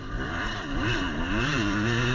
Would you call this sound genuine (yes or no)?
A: no